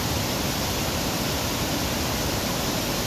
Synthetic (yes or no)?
no